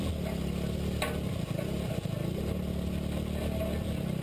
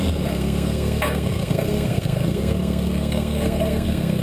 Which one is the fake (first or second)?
second